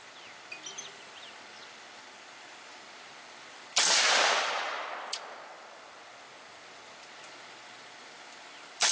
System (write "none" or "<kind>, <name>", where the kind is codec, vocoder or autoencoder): none